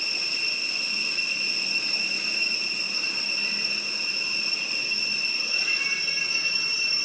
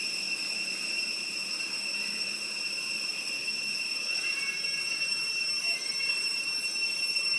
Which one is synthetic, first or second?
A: second